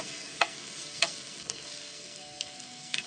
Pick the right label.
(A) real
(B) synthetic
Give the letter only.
B